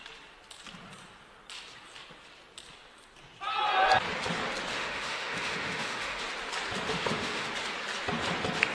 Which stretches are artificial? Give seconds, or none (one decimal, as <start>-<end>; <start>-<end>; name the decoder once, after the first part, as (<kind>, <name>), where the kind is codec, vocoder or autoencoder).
4.7-6.2 (autoencoder, DAC-VAE); 6.9-7.5